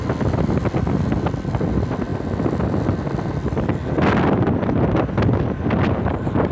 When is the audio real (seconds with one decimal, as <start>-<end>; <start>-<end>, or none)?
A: 0.0-6.5